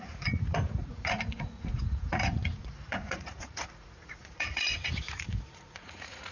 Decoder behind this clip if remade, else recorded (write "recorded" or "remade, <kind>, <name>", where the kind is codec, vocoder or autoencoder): remade, vocoder, Vocos